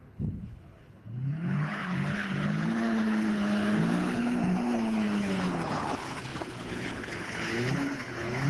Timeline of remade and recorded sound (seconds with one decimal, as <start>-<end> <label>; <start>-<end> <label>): 0.0-8.5 remade